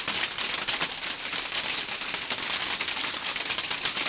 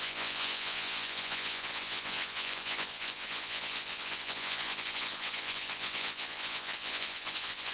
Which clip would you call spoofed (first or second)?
second